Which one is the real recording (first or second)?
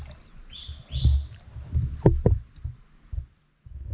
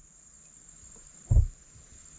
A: first